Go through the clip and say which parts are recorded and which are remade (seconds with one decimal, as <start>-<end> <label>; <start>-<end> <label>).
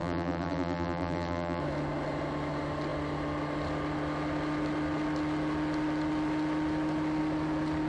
0.0-1.6 remade; 1.6-7.9 recorded